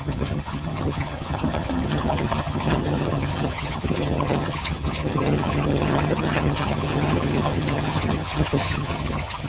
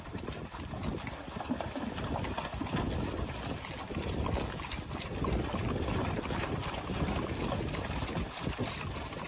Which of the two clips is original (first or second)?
second